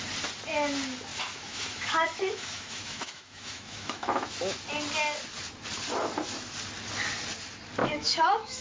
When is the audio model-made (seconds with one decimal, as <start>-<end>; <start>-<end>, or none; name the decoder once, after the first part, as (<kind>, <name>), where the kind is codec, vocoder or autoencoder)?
1.1-4.6 (autoencoder, DAC-VAE); 7.8-8.6